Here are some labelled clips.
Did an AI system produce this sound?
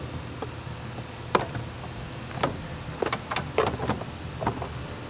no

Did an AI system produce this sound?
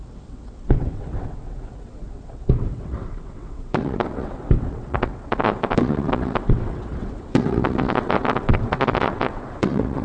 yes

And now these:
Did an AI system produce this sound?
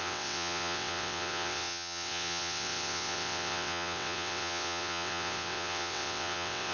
yes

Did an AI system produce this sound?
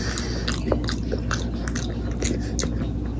no